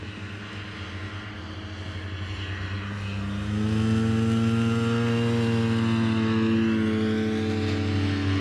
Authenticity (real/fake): real